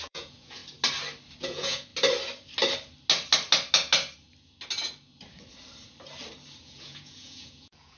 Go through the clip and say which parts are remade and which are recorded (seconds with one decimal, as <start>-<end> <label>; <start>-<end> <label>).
0.0-0.6 remade; 0.6-1.4 recorded; 1.4-1.9 remade; 1.9-6.6 recorded; 6.6-8.0 remade